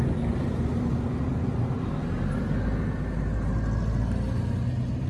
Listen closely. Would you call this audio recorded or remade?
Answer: recorded